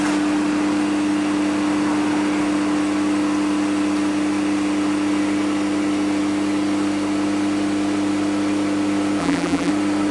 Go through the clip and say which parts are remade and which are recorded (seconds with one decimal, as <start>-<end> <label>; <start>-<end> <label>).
0.0-9.2 recorded; 9.2-9.7 remade; 9.7-10.1 recorded